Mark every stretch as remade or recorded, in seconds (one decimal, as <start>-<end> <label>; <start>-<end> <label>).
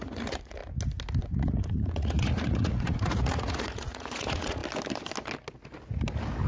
0.0-0.6 remade; 0.6-1.2 recorded; 1.2-4.6 remade; 4.6-6.5 recorded